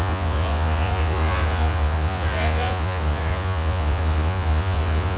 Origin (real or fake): fake